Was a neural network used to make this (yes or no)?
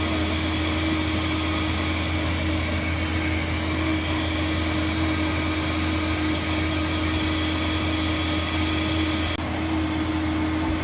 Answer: no